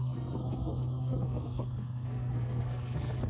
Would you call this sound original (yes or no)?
no